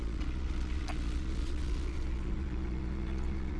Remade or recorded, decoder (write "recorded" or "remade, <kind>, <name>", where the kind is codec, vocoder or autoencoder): remade, vocoder, Vocos